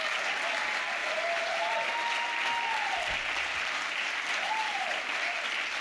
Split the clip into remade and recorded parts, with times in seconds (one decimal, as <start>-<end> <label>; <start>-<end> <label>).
0.0-1.0 recorded; 1.0-1.7 remade; 1.7-5.8 recorded